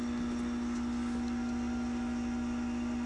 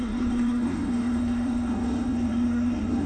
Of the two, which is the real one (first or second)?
first